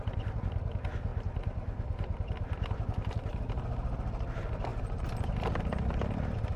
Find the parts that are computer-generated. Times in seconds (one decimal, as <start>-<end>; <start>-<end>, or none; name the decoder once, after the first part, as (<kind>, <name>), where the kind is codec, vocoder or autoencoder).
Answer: none